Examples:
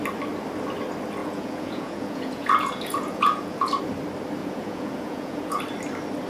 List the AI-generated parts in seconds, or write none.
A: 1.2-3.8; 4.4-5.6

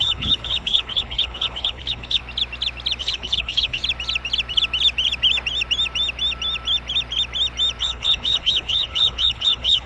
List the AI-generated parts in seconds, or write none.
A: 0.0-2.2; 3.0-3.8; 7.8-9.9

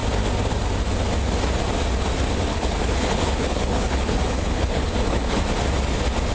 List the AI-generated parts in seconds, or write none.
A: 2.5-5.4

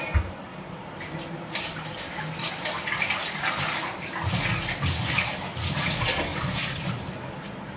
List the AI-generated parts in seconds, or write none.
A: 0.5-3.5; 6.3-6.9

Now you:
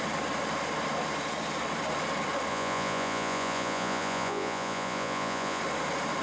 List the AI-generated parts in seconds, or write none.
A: 2.5-5.6